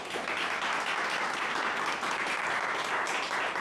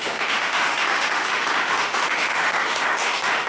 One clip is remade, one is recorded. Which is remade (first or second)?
second